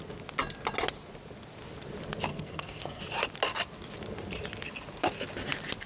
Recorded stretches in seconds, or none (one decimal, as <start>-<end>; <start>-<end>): 0.0-2.3; 3.0-5.9